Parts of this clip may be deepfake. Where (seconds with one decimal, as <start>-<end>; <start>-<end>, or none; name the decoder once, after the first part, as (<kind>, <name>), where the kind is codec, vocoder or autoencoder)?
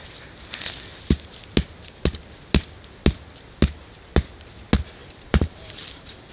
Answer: 5.0-6.3 (vocoder, BigVGAN v2)